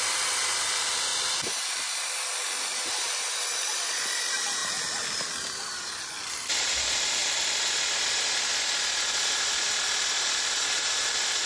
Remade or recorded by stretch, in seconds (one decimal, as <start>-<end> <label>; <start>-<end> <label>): 0.0-11.5 recorded